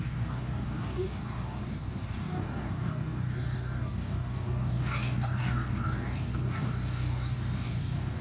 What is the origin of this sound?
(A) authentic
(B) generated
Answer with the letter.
B